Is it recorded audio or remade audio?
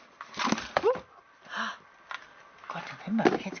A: recorded